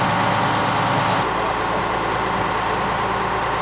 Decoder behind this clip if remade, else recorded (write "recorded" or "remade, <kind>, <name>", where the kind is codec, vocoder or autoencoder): recorded